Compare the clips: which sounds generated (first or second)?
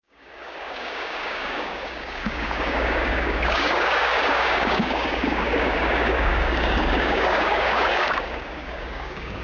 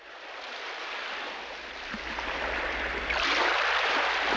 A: first